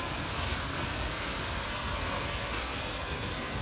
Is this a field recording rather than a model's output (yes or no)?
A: no